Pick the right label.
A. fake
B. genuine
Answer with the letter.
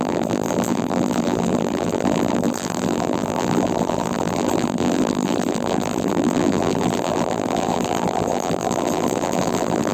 A